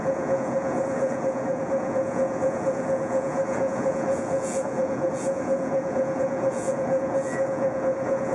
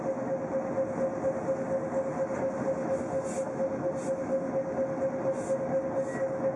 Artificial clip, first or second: first